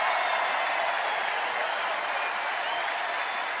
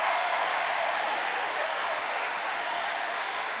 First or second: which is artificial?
second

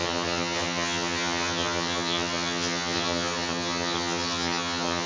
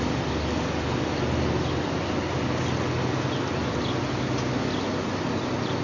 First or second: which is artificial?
first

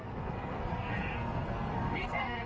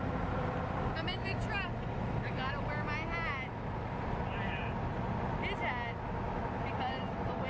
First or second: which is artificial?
first